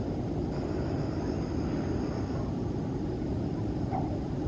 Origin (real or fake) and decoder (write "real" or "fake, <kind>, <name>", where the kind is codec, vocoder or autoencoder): real